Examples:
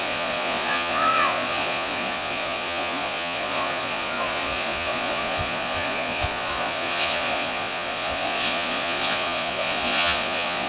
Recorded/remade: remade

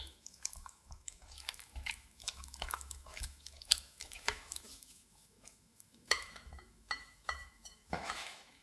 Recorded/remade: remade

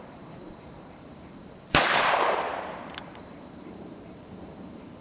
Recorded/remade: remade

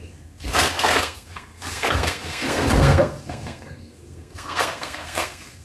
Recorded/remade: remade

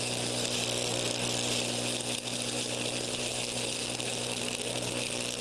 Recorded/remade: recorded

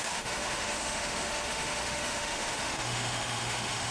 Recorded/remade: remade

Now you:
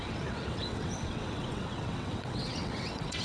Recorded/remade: remade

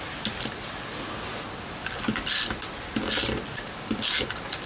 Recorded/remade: recorded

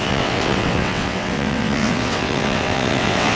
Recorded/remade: remade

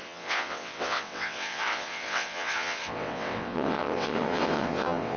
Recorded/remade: remade